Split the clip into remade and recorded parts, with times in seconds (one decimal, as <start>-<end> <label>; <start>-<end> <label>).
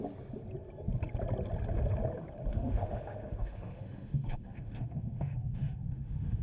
0.0-2.5 recorded; 2.5-6.4 remade